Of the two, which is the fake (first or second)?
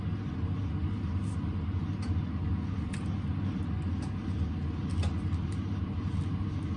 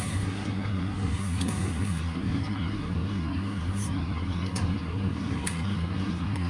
second